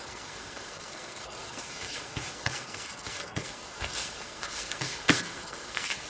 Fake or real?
fake